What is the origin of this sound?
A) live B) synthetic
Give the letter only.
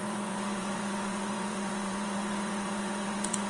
B